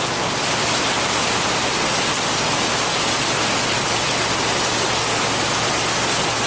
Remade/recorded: recorded